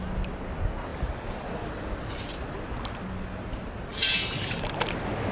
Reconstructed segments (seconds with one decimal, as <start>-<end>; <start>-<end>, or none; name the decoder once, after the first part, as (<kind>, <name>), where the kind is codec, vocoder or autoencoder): none